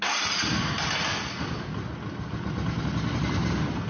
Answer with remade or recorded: recorded